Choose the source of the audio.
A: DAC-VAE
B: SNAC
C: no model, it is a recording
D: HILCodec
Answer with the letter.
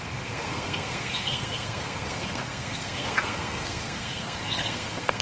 B